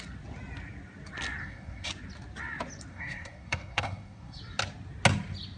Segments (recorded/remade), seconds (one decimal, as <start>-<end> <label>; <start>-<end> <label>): 0.0-1.4 recorded; 1.4-1.9 remade; 1.9-2.9 recorded; 2.9-4.4 remade; 4.4-5.6 recorded